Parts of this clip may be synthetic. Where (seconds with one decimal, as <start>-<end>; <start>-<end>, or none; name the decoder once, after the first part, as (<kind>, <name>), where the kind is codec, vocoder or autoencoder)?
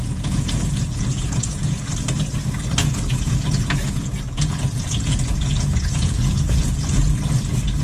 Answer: 0.0-1.9 (vocoder, Vocos); 2.8-7.1